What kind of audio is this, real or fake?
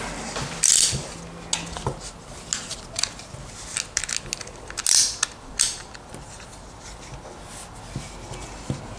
real